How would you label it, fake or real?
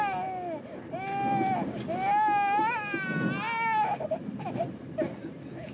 real